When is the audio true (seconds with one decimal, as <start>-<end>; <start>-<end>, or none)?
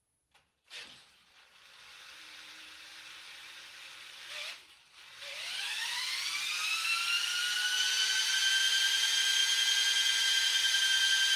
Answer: 7.3-8.6; 9.4-10.4